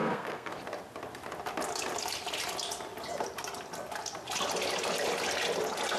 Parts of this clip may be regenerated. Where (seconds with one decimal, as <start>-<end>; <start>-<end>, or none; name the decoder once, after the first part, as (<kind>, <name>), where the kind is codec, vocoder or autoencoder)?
0.0-0.5 (codec, SNAC)